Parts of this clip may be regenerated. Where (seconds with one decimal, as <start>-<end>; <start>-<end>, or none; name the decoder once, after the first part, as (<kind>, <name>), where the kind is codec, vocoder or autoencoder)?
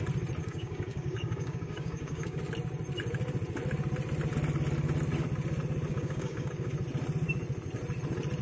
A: 0.4-2.4 (codec, DAC); 5.9-6.7